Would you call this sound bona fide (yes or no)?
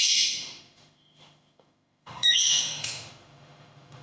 no